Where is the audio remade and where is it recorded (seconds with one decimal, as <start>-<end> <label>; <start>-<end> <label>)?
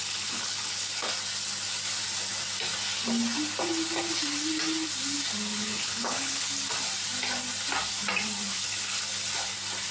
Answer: 0.0-1.1 remade; 1.1-5.5 recorded; 5.5-6.4 remade; 6.4-8.5 recorded; 8.5-9.0 remade; 9.0-9.9 recorded